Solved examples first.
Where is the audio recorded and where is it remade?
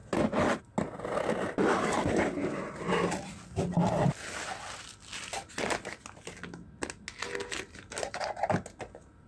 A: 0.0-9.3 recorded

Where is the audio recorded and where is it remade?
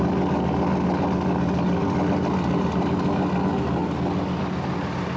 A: 0.0-5.2 recorded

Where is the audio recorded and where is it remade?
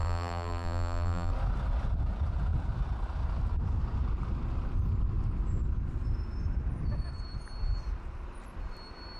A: 0.0-1.3 remade; 1.3-9.2 recorded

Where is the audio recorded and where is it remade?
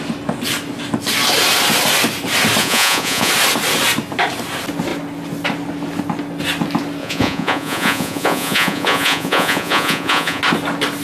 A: 0.0-2.6 recorded; 2.6-3.3 remade; 3.3-7.0 recorded; 7.0-10.4 remade; 10.4-11.0 recorded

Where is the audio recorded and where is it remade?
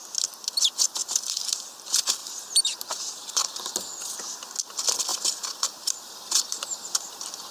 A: 0.0-1.0 recorded; 1.0-1.6 remade; 1.6-2.2 recorded; 2.2-3.7 remade; 3.7-5.1 recorded; 5.1-7.1 remade; 7.1-7.5 recorded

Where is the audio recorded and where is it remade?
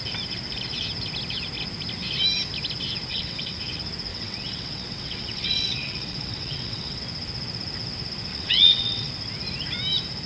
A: 0.0-3.1 recorded; 3.1-3.6 remade; 3.6-4.1 recorded; 4.1-7.0 remade; 7.0-8.3 recorded; 8.3-9.1 remade; 9.1-10.3 recorded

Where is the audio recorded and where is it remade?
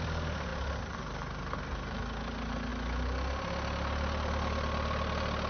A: 0.0-5.5 recorded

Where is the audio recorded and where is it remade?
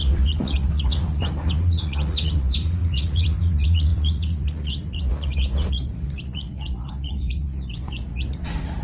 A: 0.0-8.8 remade